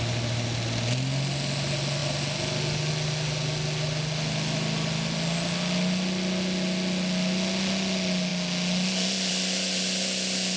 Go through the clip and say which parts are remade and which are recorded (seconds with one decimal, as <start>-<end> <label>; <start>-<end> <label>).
0.0-10.6 recorded